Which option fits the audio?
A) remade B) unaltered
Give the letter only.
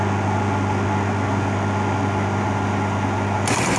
B